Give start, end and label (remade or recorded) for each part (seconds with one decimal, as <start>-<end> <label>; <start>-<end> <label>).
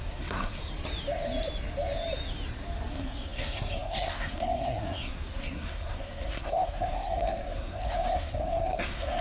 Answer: 0.0-0.6 remade; 0.6-2.9 recorded; 2.9-9.2 remade